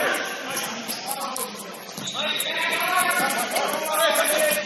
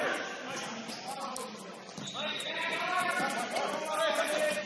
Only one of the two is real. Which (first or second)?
second